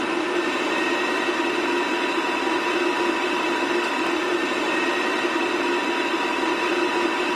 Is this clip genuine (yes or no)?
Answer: yes